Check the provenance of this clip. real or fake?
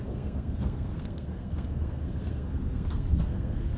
fake